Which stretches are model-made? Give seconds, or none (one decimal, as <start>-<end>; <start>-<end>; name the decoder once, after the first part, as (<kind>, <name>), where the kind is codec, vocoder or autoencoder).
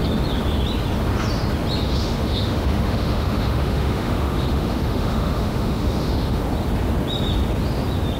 1.8-6.4 (autoencoder, DAC-VAE)